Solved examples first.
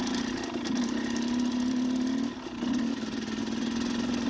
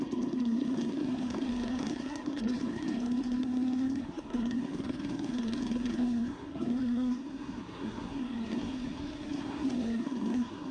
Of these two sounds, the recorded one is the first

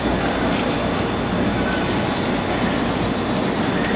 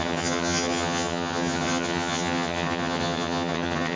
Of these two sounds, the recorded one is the first